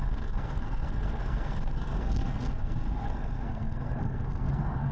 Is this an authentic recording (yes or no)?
no